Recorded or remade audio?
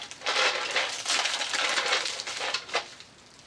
recorded